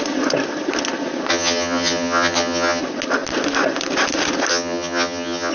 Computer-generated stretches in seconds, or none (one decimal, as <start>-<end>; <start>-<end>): 1.3-2.8; 4.5-5.5